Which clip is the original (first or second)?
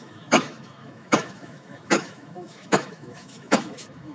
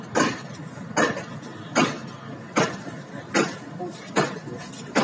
second